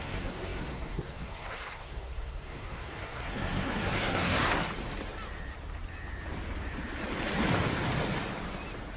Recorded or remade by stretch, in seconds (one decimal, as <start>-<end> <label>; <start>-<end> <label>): 0.0-4.6 remade; 4.6-9.0 recorded